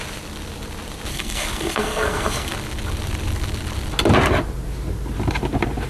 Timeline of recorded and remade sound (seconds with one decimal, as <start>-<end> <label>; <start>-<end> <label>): 0.0-1.1 recorded; 1.1-2.5 remade; 2.5-5.9 recorded